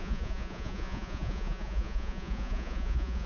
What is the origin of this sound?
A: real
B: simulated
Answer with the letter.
B